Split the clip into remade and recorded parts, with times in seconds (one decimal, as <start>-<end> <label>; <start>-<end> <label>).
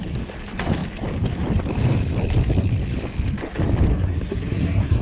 0.0-3.9 recorded; 3.9-5.0 remade